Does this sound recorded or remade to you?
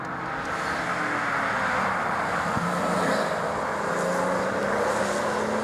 recorded